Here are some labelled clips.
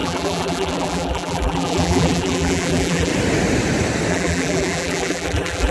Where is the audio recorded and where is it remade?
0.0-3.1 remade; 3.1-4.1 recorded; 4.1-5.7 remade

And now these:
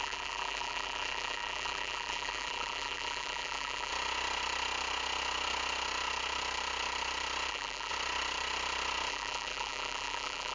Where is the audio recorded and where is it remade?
0.0-3.9 remade; 3.9-7.5 recorded; 7.5-7.9 remade; 7.9-9.1 recorded; 9.1-10.5 remade

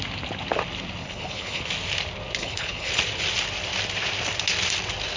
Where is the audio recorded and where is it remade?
0.0-1.0 recorded; 1.0-1.6 remade; 1.6-2.4 recorded; 2.4-2.9 remade; 2.9-5.2 recorded

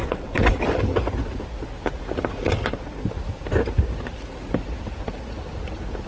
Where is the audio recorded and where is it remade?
0.0-0.6 remade; 0.6-6.1 recorded

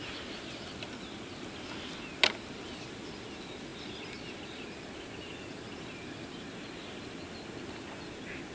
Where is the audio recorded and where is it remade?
0.0-8.5 recorded

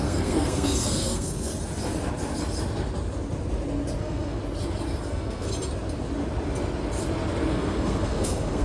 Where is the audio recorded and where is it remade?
0.0-1.5 remade; 1.5-4.0 recorded; 4.0-4.4 remade; 4.4-5.0 recorded; 5.0-5.5 remade; 5.5-7.5 recorded; 7.5-8.6 remade

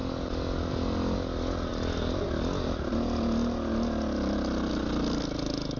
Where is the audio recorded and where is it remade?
0.0-5.8 recorded

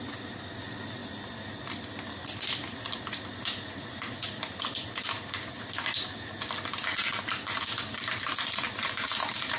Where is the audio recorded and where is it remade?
0.0-9.6 recorded